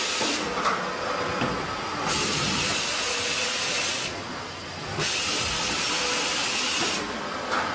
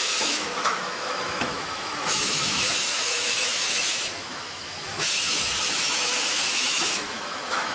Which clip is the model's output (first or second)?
second